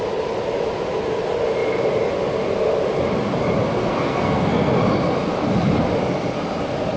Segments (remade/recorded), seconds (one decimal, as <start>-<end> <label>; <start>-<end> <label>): 0.0-3.8 recorded; 3.8-4.8 remade; 4.8-7.0 recorded